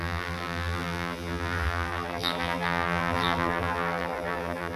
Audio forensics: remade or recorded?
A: remade